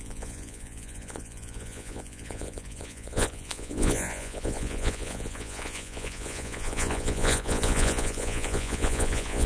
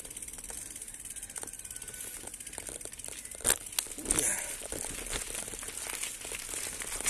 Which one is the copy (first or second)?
first